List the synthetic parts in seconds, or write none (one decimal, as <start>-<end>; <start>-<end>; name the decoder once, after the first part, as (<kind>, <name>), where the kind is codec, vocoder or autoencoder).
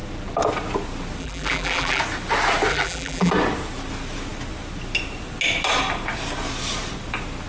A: 1.2-2.0 (vocoder, BigVGAN v2); 2.7-3.3